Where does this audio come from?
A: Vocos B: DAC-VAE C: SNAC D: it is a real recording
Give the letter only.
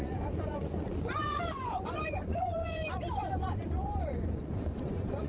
A